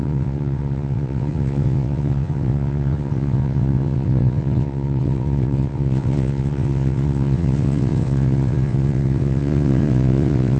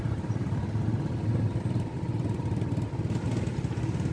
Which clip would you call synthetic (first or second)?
first